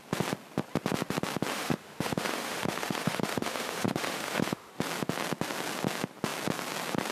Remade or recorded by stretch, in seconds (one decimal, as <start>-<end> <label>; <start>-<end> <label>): 0.0-1.5 recorded; 1.5-4.7 remade; 4.7-7.1 recorded